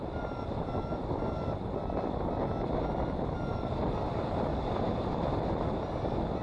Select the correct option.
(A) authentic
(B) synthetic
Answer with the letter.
A